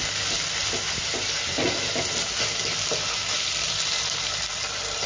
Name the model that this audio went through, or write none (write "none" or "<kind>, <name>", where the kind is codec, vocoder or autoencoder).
none